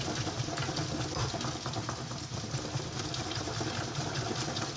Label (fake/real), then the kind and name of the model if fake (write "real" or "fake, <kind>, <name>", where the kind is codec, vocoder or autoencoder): real